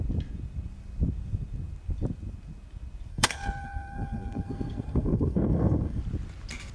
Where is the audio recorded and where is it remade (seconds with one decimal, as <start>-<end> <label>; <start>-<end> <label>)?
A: 0.0-3.1 recorded; 3.1-6.0 remade; 6.0-6.7 recorded